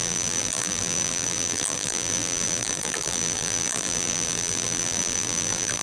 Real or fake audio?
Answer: fake